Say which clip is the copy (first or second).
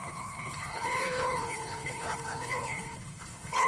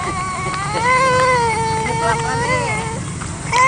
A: first